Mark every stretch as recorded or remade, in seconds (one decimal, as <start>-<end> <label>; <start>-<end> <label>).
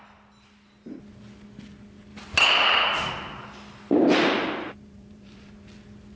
0.0-4.2 recorded; 4.2-5.7 remade; 5.7-6.2 recorded